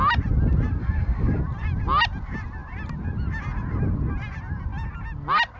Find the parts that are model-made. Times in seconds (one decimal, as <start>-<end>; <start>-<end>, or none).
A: 0.8-1.4